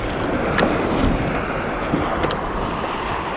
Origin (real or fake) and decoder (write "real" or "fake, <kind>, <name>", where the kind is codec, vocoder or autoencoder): real